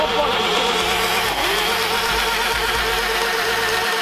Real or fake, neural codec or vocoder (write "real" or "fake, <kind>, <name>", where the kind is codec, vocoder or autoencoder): real